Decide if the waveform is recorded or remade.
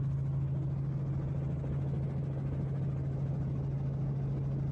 recorded